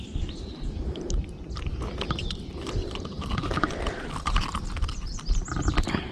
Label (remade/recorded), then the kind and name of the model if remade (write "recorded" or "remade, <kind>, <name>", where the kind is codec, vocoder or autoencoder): recorded